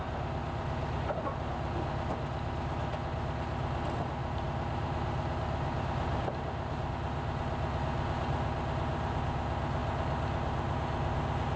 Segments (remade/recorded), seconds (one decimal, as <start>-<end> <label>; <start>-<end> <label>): 0.0-4.2 recorded; 4.2-6.9 remade; 6.9-11.6 recorded